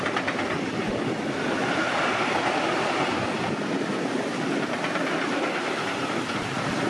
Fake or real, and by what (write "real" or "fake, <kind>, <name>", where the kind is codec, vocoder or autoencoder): real